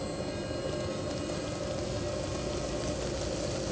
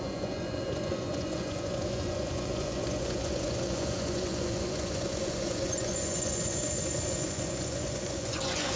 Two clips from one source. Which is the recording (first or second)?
first